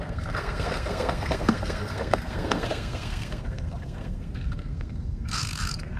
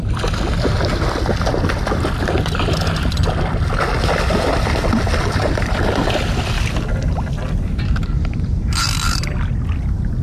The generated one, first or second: first